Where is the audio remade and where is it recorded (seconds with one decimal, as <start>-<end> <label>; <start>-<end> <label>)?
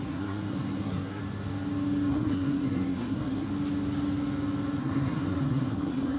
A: 0.0-1.2 remade; 1.2-2.1 recorded; 2.1-3.5 remade; 3.5-4.8 recorded; 4.8-6.2 remade